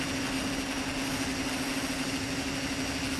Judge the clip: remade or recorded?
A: recorded